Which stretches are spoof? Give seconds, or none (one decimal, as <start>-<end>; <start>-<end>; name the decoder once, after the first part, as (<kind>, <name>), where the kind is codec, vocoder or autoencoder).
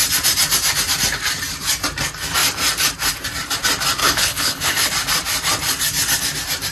4.0-4.9 (codec, HILCodec)